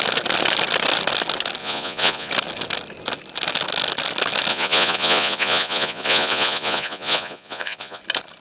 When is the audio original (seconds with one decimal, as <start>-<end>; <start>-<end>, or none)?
0.0-1.6; 2.3-4.5; 8.0-8.4